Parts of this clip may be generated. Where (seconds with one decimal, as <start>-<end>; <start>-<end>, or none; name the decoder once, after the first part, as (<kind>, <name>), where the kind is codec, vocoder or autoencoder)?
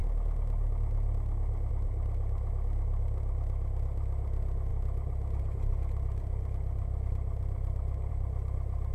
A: none